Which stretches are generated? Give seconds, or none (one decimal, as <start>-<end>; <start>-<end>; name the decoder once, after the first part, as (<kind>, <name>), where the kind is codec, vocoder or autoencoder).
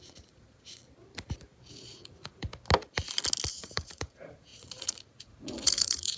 0.0-0.8 (vocoder, Vocos); 1.7-2.5; 3.5-6.2